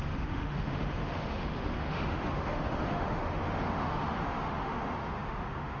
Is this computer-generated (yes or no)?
yes